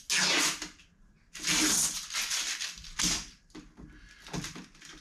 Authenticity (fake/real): real